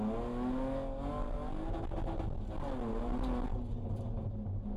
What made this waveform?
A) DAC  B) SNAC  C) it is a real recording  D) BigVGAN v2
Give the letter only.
C